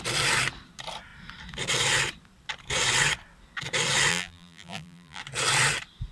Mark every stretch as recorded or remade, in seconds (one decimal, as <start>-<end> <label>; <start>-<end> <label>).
0.0-4.1 recorded; 4.1-5.2 remade; 5.2-6.1 recorded